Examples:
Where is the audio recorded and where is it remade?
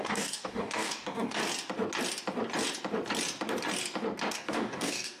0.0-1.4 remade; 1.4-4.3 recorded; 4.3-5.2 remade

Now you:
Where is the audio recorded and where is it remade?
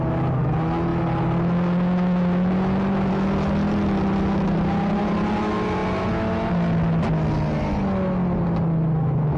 0.0-9.4 recorded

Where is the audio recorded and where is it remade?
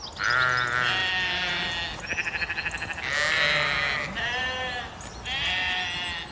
0.0-6.3 recorded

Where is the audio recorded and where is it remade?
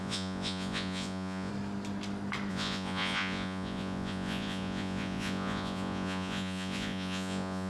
0.0-1.5 remade; 1.5-2.5 recorded; 2.5-7.7 remade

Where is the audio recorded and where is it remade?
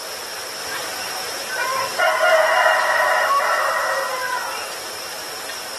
0.0-4.4 remade; 4.4-5.8 recorded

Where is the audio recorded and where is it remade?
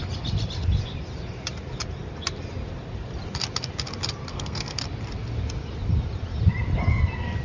0.0-4.3 recorded; 4.3-4.8 remade; 4.8-7.4 recorded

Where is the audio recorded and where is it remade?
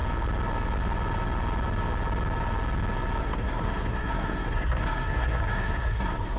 0.0-3.2 recorded; 3.2-6.4 remade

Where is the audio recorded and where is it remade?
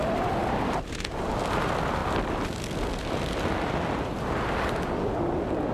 0.0-5.7 recorded